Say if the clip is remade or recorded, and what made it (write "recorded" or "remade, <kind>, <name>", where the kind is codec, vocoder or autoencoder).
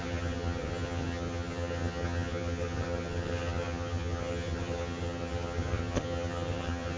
remade, vocoder, HiFi-GAN